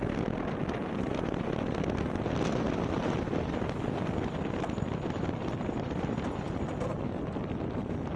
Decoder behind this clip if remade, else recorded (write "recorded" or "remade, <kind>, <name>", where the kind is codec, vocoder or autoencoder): recorded